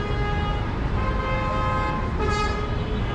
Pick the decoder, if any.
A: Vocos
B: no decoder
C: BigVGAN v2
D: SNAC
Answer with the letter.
B